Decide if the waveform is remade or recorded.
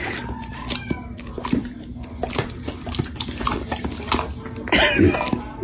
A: recorded